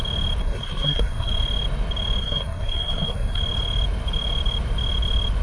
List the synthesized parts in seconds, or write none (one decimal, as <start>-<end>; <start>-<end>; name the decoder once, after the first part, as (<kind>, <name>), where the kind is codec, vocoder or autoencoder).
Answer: 0.4-1.3 (codec, SNAC); 2.2-3.4